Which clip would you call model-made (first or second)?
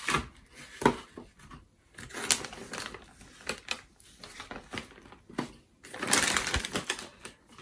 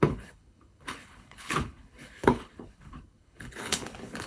second